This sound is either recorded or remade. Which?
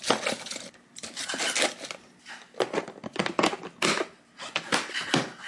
recorded